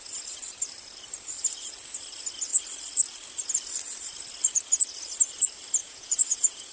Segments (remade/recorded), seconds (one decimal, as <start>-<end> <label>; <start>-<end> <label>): 0.0-5.8 recorded; 5.8-6.7 remade